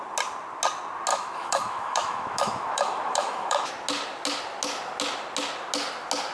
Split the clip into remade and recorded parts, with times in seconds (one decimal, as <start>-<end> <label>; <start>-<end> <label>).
0.0-1.1 recorded; 1.1-3.7 remade; 3.7-6.3 recorded